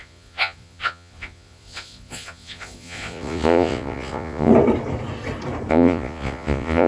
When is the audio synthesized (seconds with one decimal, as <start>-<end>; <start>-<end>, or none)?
0.0-4.5; 5.7-6.9